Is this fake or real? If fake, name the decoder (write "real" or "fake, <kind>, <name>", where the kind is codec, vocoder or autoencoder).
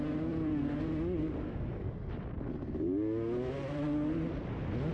real